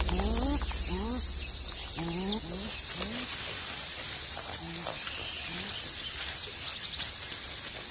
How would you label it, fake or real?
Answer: real